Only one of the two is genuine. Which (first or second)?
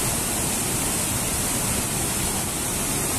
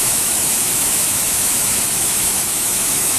first